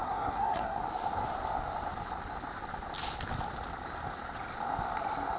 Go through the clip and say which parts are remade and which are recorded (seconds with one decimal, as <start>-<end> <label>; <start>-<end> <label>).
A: 0.0-0.8 remade; 0.8-5.4 recorded